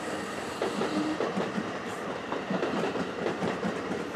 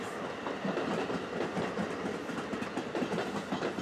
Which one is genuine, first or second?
second